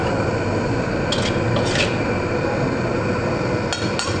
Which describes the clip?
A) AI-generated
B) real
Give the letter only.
B